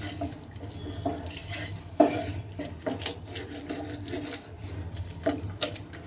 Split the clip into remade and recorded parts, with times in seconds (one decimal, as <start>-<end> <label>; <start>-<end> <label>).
0.0-6.1 recorded